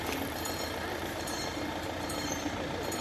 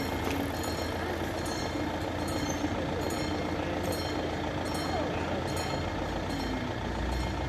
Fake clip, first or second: first